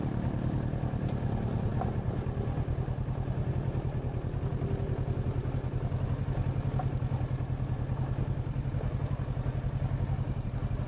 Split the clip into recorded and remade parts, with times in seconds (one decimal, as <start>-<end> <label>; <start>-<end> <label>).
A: 0.0-10.9 recorded